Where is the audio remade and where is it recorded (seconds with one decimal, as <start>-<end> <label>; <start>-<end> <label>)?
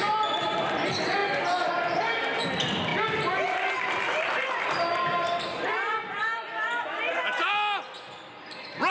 0.0-8.9 recorded